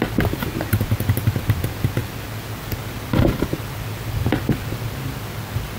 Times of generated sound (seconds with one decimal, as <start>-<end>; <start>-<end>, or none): none